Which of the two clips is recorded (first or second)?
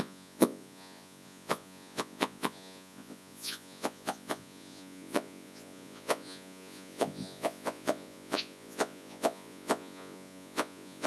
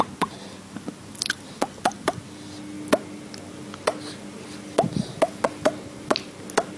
second